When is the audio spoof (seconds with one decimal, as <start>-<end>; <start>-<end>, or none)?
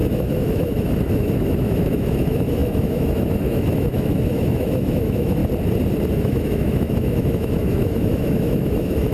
0.0-5.4; 6.2-9.1